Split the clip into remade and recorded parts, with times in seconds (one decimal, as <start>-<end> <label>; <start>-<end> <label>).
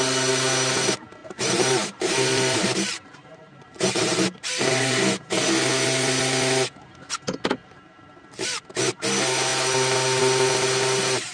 0.0-1.2 recorded; 1.2-5.3 remade; 5.3-7.6 recorded; 7.6-8.6 remade; 8.6-11.3 recorded